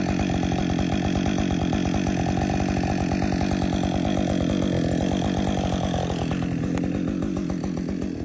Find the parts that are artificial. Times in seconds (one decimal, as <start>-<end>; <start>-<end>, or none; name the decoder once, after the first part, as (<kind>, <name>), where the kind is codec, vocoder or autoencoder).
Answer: none